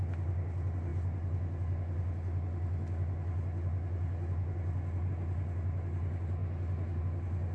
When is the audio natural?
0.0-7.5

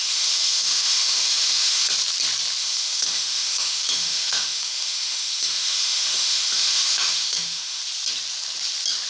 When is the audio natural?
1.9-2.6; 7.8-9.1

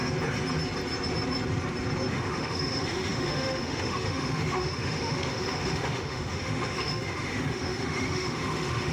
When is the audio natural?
0.0-2.1

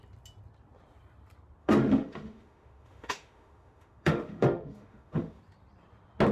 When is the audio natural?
0.0-1.6; 5.4-6.3

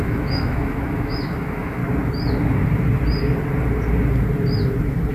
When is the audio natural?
1.8-5.1

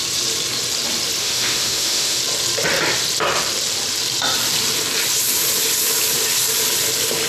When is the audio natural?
0.0-1.2; 2.2-7.3

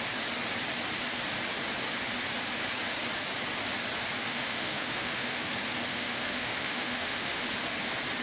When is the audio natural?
0.0-4.3; 5.5-5.9; 7.4-8.2

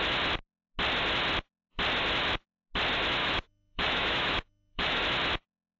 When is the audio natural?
0.0-3.2; 5.0-5.8